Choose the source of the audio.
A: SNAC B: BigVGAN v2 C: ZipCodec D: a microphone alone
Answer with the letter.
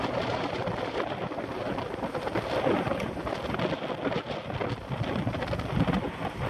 D